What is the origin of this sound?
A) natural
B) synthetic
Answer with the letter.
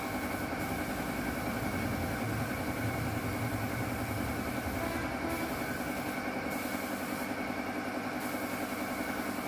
A